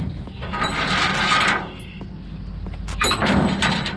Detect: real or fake real